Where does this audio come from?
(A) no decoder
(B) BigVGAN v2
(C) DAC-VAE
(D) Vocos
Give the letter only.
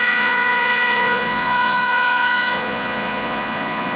D